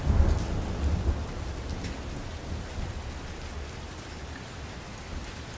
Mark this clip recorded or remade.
recorded